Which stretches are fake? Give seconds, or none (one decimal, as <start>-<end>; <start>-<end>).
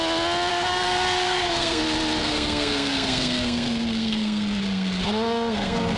0.5-1.8; 2.2-6.0